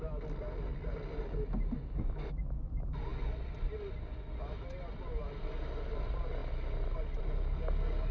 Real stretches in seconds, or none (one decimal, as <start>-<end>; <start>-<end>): 0.0-8.1

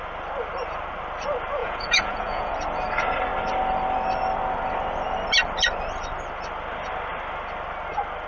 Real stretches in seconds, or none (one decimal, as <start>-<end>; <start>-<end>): 0.0-1.6; 2.5-8.3

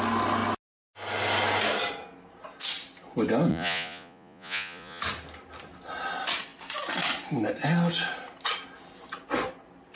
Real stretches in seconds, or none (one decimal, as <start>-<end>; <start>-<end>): 0.0-3.5; 5.0-10.0

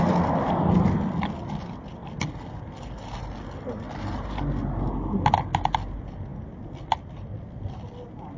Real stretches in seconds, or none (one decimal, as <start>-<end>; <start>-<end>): 0.0-8.4

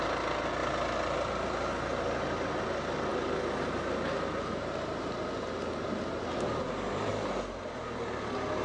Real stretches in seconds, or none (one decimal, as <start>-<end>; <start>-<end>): 0.0-8.6

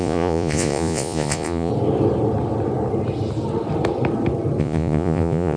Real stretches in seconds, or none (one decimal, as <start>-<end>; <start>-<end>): 1.7-4.6

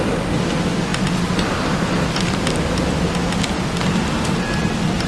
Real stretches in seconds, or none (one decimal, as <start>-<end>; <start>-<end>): 0.0-5.1